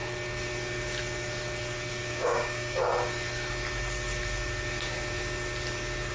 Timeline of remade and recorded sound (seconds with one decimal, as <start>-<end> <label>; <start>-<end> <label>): 0.0-1.9 recorded; 1.9-2.8 remade; 2.8-6.1 recorded